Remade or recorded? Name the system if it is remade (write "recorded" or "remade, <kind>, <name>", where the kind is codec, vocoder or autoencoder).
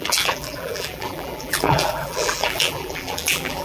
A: remade, vocoder, BigVGAN v2